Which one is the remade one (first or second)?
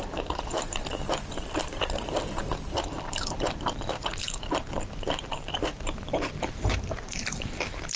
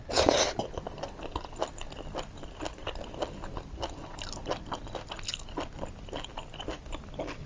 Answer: first